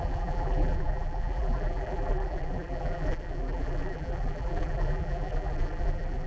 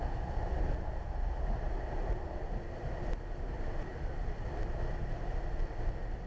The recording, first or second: second